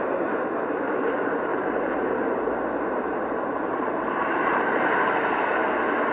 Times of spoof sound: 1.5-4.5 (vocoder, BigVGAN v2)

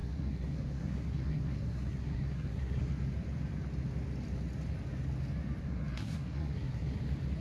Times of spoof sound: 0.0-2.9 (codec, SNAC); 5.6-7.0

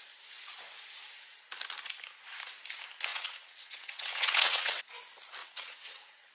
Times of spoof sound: 3.1-4.8 (vocoder, WaveNeXt); 5.4-6.3

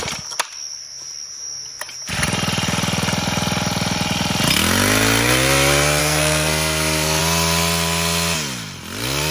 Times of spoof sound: 6.0-7.2 (codec, SNAC)

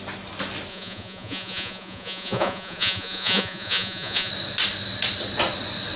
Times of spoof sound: 0.7-4.3 (vocoder, Vocos)

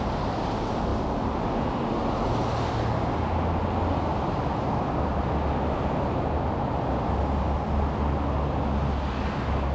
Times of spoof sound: none

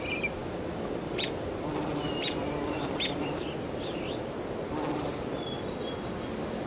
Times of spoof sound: 0.4-3.0 (vocoder, BigVGAN v2)